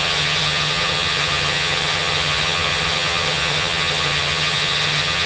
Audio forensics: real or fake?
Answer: fake